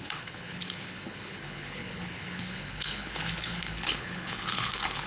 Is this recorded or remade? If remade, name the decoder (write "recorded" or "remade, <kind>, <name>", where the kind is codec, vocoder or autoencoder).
remade, codec, HILCodec